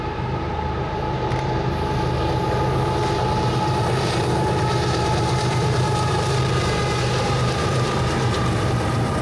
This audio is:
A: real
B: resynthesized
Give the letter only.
B